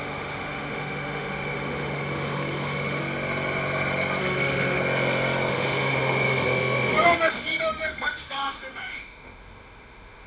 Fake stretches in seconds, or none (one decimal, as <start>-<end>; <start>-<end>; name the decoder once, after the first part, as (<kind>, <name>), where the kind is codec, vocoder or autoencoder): 0.0-3.0 (autoencoder, DAC-VAE); 4.2-4.8; 5.5-10.3